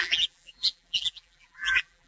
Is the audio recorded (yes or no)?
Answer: no